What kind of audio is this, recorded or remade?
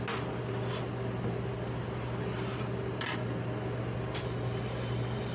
recorded